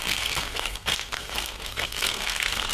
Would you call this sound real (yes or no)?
no